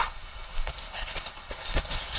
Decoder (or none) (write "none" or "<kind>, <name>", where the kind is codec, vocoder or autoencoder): codec, HILCodec